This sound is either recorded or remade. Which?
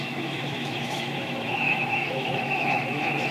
remade